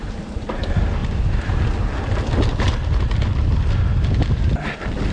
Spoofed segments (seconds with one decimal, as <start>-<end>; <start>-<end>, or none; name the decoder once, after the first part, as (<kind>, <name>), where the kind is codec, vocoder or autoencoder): none